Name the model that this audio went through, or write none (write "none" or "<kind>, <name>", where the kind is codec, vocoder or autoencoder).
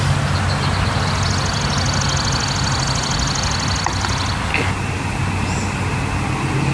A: none